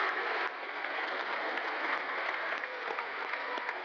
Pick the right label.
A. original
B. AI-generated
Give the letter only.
B